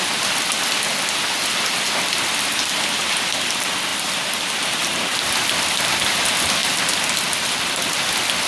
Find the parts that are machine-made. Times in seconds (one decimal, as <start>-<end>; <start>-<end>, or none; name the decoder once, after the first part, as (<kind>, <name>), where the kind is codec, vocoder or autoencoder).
3.9-5.8 (vocoder, BigVGAN v2); 6.6-8.0